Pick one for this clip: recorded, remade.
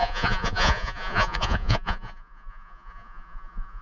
remade